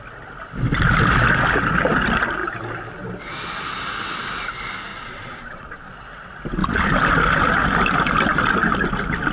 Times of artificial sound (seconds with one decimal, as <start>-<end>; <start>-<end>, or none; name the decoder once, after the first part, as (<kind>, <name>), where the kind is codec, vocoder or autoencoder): 4.9-5.9 (vocoder, Vocos)